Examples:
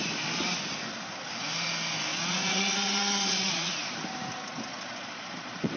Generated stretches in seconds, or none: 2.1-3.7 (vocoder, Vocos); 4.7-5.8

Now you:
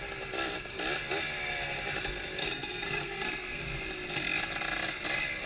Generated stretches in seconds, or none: 2.4-3.6 (codec, SNAC)

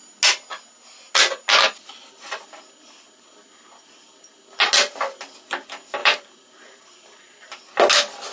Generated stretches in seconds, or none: 6.0-7.2 (vocoder, BigVGAN v2)

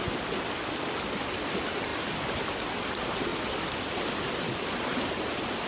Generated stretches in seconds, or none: none

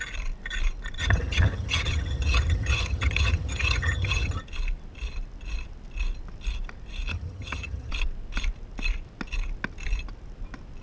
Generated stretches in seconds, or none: 1.0-4.4 (vocoder, HiFi-GAN); 7.1-7.9